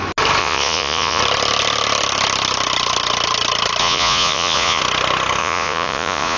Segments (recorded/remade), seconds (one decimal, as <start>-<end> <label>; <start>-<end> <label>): 0.0-0.4 recorded; 0.4-1.2 remade; 1.2-3.8 recorded; 3.8-4.8 remade; 4.8-5.4 recorded; 5.4-6.4 remade